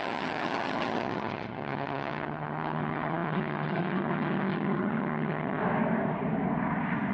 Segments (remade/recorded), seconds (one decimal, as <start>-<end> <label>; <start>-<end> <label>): 0.0-5.6 remade; 5.6-7.1 recorded